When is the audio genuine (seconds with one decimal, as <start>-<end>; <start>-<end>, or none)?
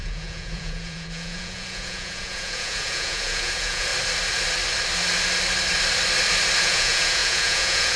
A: 3.9-6.6